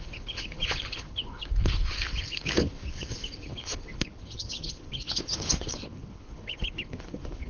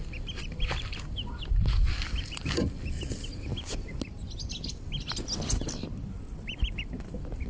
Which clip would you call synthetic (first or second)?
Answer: first